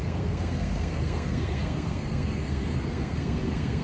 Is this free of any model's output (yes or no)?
no